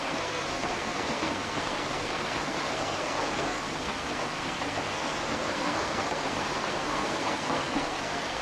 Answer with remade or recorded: remade